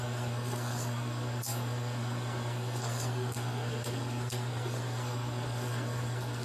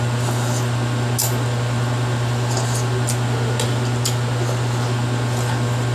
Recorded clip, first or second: second